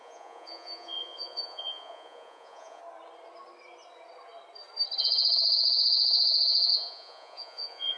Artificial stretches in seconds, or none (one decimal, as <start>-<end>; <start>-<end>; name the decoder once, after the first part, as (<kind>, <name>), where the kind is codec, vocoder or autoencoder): 0.0-2.8 (vocoder, Vocos); 5.0-8.0